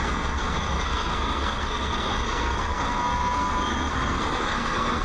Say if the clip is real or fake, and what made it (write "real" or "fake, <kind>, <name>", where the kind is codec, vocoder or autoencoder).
fake, codec, SNAC